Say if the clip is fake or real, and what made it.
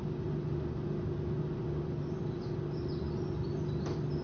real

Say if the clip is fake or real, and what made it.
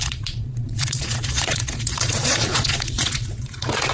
fake, vocoder, Vocos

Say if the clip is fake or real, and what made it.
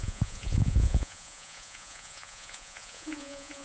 fake, vocoder, Vocos